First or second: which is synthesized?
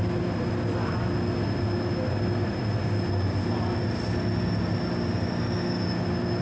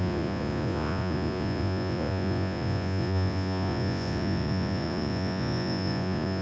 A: second